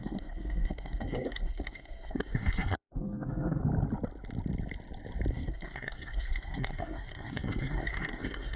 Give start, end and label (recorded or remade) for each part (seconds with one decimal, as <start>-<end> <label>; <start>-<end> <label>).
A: 0.0-3.6 remade; 3.6-5.3 recorded; 5.3-8.6 remade